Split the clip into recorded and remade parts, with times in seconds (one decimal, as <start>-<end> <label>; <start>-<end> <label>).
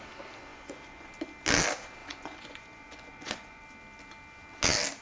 0.0-0.5 recorded; 0.5-1.1 remade; 1.1-2.0 recorded; 2.0-3.6 remade; 3.6-5.0 recorded